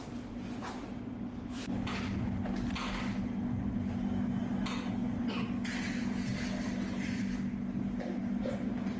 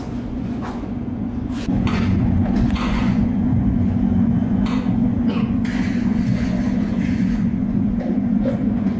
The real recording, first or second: first